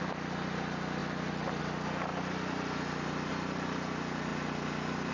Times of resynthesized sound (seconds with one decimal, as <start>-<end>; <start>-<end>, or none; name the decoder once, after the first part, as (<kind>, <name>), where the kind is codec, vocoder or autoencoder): none